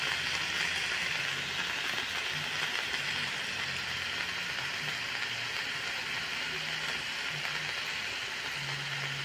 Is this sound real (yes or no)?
yes